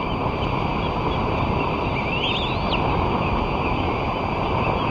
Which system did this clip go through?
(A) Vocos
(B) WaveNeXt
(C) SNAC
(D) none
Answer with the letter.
D